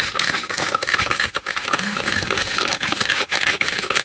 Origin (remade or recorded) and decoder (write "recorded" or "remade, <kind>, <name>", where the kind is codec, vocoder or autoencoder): remade, autoencoder, DAC-VAE